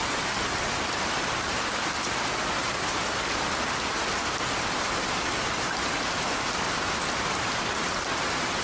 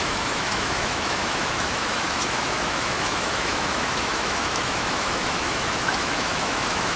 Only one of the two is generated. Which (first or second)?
second